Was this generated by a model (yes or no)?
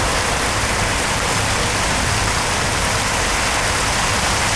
no